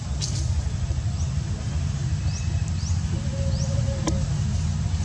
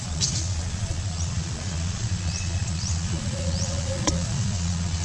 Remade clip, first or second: second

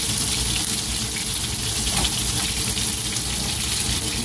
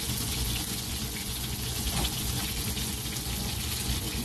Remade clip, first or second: second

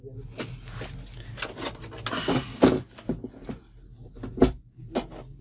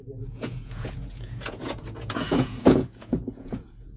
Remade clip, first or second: second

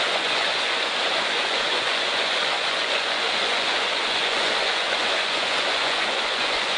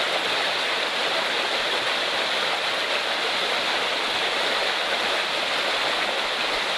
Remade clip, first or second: first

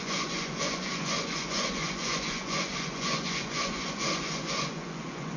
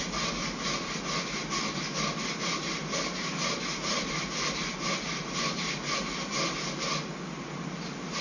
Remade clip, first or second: first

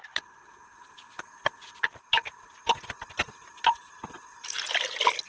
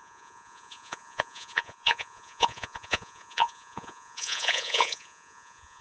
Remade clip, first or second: second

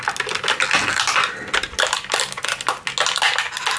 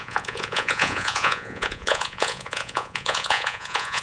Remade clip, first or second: second